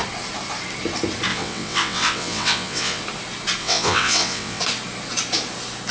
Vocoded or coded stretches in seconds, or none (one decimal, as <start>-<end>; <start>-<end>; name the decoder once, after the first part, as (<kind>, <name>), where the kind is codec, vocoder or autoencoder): 1.3-3.0 (vocoder, WaveNeXt); 3.6-4.6